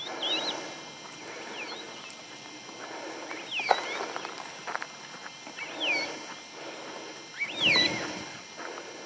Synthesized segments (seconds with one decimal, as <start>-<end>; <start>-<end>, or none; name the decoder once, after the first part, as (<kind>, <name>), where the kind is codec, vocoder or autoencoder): none